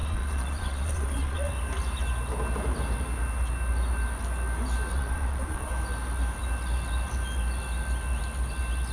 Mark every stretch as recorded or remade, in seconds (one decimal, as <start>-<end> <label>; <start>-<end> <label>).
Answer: 0.0-1.5 remade; 1.5-4.9 recorded; 4.9-5.7 remade; 5.7-8.9 recorded